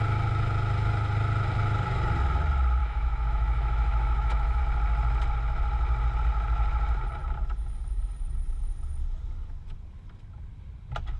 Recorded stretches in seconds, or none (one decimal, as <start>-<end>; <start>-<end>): 0.0-2.8; 4.6-11.2